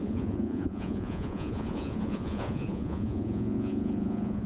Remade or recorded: remade